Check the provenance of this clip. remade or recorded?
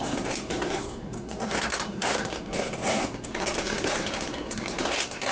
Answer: remade